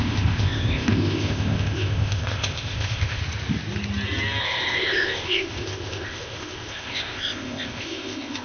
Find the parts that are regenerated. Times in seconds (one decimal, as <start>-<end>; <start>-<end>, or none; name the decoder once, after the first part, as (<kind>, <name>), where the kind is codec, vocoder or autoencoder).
0.0-3.2 (codec, ZipCodec); 4.4-8.4